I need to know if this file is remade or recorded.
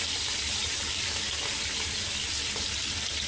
recorded